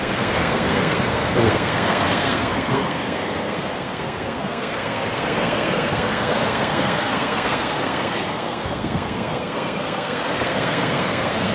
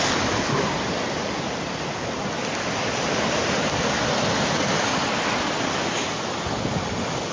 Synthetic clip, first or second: first